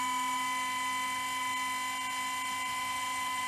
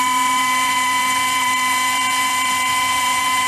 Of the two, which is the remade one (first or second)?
second